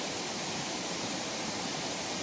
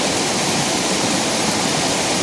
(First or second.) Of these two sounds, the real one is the second